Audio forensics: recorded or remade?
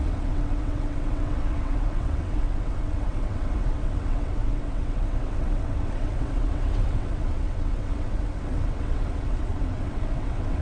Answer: remade